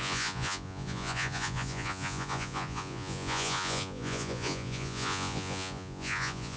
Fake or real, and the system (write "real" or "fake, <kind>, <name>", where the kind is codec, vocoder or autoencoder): fake, vocoder, Vocos